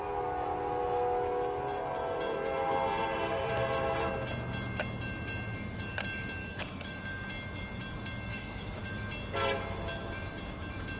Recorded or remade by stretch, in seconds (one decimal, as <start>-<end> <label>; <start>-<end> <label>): 0.0-6.4 recorded; 6.4-7.0 remade; 7.0-8.3 recorded; 8.3-8.8 remade; 8.8-11.0 recorded

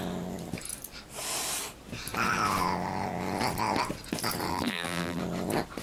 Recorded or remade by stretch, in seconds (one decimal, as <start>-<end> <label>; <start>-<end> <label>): 0.0-4.5 recorded; 4.5-5.2 remade; 5.2-5.8 recorded

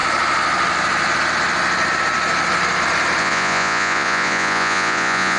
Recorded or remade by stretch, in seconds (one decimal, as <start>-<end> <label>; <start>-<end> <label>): 0.0-3.2 recorded; 3.2-5.4 remade

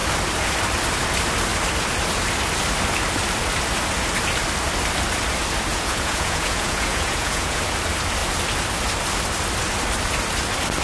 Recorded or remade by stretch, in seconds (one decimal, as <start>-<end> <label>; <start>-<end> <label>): 0.0-5.7 recorded; 5.7-7.6 remade; 7.6-10.8 recorded

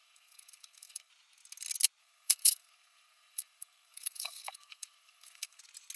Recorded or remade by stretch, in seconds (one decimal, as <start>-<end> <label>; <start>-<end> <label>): 0.0-1.1 remade; 1.1-2.0 recorded; 2.0-5.6 remade; 5.6-6.0 recorded

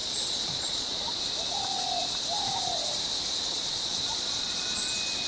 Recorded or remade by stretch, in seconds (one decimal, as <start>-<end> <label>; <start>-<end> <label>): 0.0-1.2 remade; 1.2-3.5 recorded; 3.5-4.8 remade; 4.8-5.3 recorded

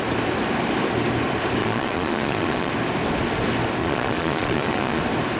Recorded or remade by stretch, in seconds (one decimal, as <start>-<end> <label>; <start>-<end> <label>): 0.0-1.6 recorded; 1.6-2.7 remade; 2.7-3.8 recorded; 3.8-5.0 remade; 5.0-5.4 recorded

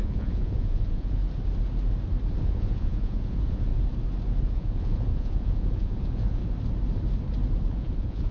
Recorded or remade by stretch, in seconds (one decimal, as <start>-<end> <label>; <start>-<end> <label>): 0.0-1.2 remade; 1.2-2.4 recorded; 2.4-3.7 remade; 3.7-4.5 recorded; 4.5-6.4 remade; 6.4-7.7 recorded; 7.7-8.3 remade